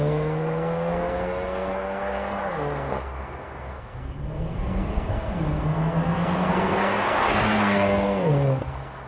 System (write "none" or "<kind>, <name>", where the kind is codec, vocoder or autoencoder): codec, SNAC